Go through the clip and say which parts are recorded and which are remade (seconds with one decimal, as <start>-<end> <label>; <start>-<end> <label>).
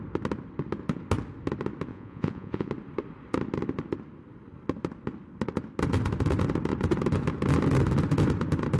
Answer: 0.0-1.9 recorded; 1.9-2.7 remade; 2.7-8.8 recorded